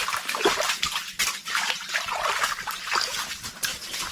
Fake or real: real